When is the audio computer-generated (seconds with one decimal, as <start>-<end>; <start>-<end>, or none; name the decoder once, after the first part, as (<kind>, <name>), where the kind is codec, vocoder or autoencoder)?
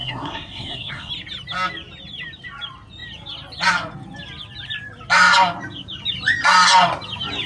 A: 0.0-1.1 (codec, SNAC)